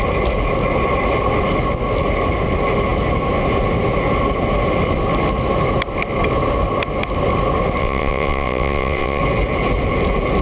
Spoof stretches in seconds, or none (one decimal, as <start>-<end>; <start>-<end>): 7.8-9.2